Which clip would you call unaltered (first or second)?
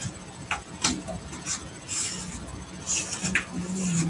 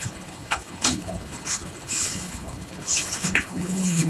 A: first